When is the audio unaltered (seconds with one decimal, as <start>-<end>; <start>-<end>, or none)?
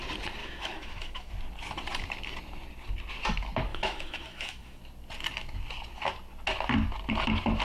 0.0-0.4; 1.3-3.7; 4.8-7.6